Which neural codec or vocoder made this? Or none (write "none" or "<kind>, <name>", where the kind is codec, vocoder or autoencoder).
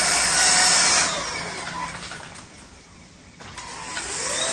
vocoder, BigVGAN v2